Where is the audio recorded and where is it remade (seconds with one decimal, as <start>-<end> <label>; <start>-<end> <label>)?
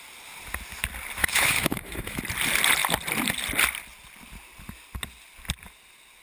0.0-1.2 recorded; 1.2-2.2 remade; 2.2-6.2 recorded